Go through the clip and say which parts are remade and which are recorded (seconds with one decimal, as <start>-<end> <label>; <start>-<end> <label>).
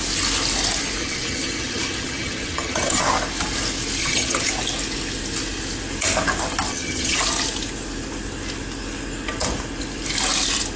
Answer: 0.0-1.0 recorded; 1.0-3.0 remade; 3.0-4.0 recorded; 4.0-4.5 remade; 4.5-6.7 recorded; 6.7-7.2 remade; 7.2-10.8 recorded